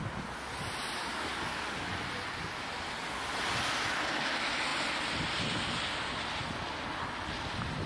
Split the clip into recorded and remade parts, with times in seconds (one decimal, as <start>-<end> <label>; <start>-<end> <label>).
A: 0.0-1.1 recorded; 1.1-1.9 remade; 1.9-7.9 recorded